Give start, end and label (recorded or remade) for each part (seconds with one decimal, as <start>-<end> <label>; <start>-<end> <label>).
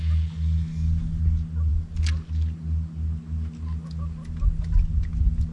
0.0-5.5 recorded